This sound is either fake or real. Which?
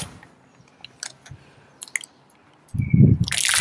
real